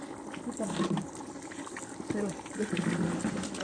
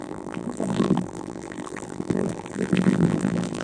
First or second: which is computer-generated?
second